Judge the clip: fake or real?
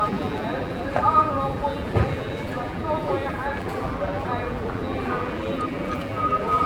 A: fake